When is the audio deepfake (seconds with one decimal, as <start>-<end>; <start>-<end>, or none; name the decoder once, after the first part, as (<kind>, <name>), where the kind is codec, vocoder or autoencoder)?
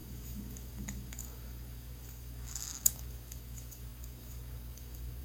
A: 0.0-5.2 (codec, DAC)